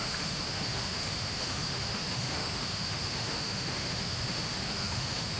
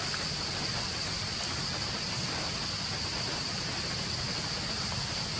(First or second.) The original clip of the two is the second